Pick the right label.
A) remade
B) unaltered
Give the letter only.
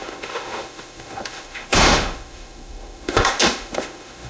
A